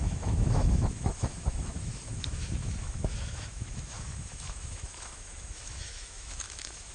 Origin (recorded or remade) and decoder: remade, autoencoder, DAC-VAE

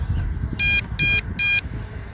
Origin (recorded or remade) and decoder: recorded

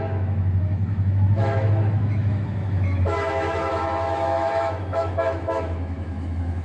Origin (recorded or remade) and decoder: remade, autoencoder, DAC-VAE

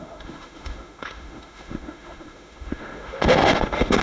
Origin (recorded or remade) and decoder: remade, autoencoder, DAC-VAE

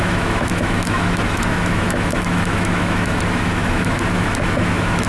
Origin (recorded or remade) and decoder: remade, autoencoder, DAC-VAE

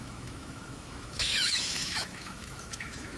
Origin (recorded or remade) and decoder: remade, autoencoder, DAC-VAE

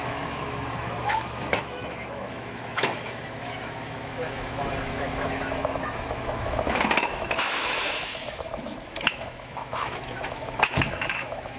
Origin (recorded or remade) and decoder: remade, autoencoder, DAC-VAE